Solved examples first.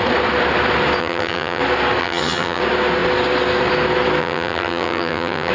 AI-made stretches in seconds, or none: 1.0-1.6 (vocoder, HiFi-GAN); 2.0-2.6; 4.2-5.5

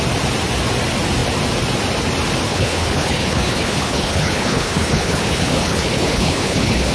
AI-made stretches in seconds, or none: 2.5-6.9 (codec, HILCodec)

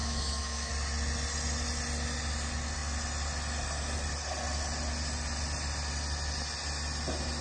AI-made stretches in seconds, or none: 0.0-0.7 (autoencoder, DAC-VAE)

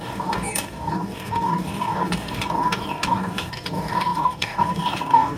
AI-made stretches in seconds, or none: 0.0-5.4 (codec, DAC)